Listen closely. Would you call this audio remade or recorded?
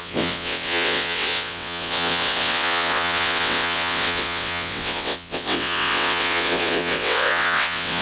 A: remade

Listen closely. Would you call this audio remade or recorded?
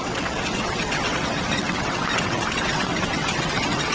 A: remade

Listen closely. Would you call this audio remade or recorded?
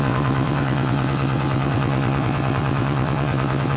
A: remade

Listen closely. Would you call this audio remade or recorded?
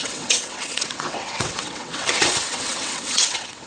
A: remade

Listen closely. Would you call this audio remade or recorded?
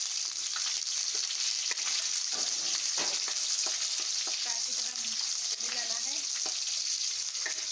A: recorded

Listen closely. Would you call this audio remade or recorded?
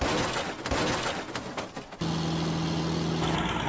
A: recorded